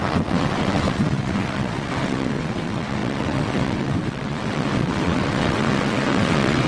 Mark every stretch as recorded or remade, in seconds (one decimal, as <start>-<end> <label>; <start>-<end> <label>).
0.0-6.7 remade